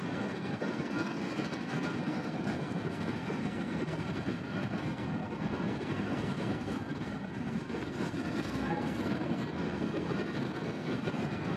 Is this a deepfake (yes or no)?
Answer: yes